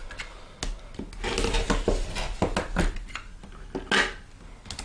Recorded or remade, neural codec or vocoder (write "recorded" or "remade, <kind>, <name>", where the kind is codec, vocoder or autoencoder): recorded